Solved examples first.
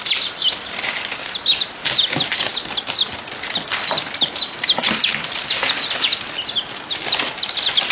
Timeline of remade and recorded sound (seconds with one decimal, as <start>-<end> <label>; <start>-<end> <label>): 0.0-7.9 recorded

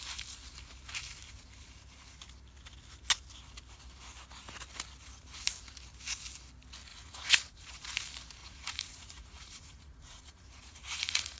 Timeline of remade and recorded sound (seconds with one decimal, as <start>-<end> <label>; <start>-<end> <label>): 0.0-6.9 recorded; 6.9-7.7 remade; 7.7-8.4 recorded; 8.4-11.4 remade

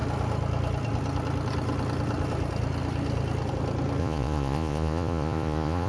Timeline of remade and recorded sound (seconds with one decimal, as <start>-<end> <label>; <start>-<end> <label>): 0.0-4.0 recorded; 4.0-5.9 remade